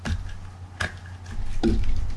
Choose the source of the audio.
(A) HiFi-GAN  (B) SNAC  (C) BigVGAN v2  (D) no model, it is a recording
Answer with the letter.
D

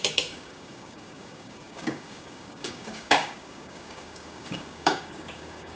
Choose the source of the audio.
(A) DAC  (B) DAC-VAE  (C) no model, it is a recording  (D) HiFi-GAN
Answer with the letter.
A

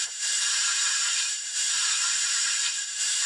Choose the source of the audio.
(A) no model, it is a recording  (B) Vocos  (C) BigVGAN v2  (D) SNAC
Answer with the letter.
C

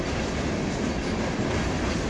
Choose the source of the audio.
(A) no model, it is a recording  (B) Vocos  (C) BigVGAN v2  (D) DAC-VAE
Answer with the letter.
A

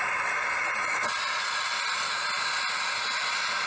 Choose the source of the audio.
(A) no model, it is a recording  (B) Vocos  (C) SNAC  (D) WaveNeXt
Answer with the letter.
A